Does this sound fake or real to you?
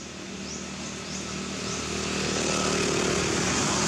real